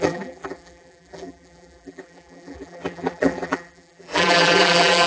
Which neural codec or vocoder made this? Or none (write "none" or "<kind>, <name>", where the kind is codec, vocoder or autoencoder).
vocoder, BigVGAN v2